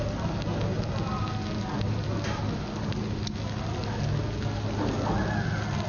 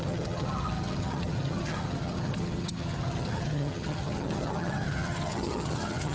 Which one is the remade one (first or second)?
second